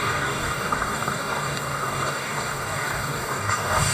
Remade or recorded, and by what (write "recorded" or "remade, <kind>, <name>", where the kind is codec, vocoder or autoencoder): remade, codec, DAC